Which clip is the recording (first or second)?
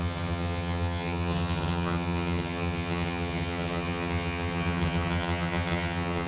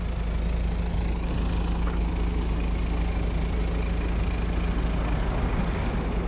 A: second